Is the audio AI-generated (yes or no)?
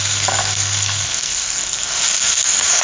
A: yes